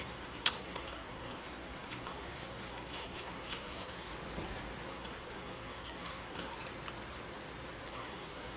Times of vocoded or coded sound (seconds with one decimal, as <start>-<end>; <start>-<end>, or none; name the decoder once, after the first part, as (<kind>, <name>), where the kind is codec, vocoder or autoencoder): 0.0-4.1 (codec, SNAC); 4.9-6.5; 7.9-8.6